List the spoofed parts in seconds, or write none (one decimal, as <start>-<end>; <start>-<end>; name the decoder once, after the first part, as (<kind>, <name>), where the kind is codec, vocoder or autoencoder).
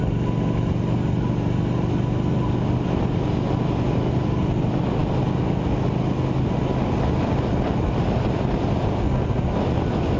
none